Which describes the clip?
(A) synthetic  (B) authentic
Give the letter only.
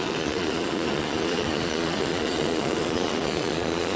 A